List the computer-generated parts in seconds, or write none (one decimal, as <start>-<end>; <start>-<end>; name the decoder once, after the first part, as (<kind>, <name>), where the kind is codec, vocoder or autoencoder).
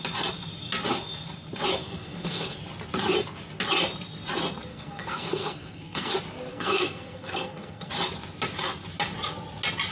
1.8-2.6 (codec, SNAC); 4.7-6.1; 6.5-7.9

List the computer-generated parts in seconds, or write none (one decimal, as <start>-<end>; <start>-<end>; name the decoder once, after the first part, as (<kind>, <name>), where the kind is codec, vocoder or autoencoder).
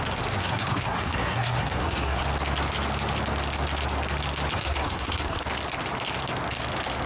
0.4-2.2 (codec, SNAC); 4.5-5.4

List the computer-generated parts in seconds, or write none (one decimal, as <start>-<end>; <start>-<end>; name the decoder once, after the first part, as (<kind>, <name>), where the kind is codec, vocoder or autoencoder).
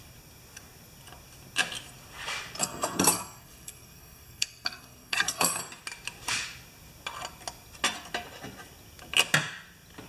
2.6-5.6 (codec, SNAC)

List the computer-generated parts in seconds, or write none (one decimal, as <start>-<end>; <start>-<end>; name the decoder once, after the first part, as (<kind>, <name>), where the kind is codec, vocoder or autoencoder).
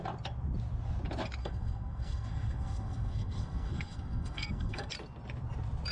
1.4-4.9 (codec, SNAC)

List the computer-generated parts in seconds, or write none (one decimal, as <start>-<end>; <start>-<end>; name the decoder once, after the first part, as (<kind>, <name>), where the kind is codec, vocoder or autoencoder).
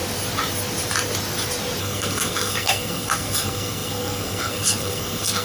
1.8-5.4 (codec, SNAC)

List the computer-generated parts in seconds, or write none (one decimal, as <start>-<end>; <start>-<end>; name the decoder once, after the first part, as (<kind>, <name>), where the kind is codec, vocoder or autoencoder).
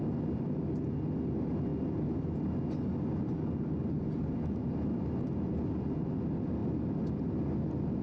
none